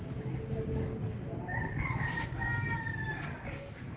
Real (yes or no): no